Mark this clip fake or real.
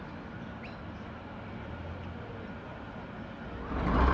real